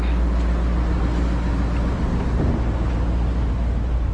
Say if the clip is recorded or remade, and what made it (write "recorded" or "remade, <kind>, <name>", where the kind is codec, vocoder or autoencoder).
recorded